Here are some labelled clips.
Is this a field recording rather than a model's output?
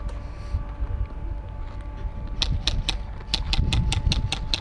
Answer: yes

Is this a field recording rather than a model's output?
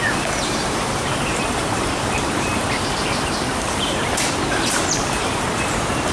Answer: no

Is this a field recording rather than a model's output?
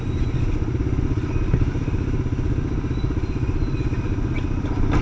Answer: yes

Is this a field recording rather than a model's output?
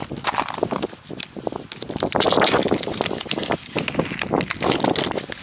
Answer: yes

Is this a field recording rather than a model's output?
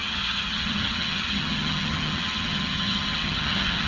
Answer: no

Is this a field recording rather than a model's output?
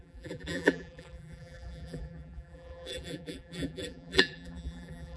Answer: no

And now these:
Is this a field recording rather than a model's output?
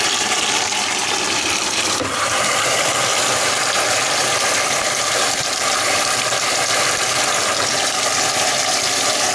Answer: no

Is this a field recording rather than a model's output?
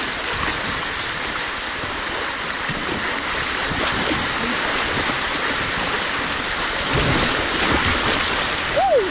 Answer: yes